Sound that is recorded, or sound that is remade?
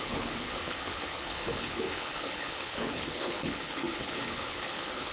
remade